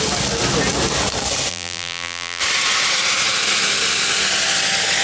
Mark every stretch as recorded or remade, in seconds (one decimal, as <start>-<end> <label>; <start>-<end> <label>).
0.0-1.5 recorded; 1.5-2.4 remade; 2.4-5.0 recorded